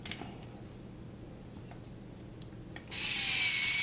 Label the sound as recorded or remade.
recorded